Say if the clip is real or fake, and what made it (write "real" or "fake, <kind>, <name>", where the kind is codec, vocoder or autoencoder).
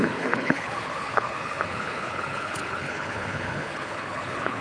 fake, codec, HILCodec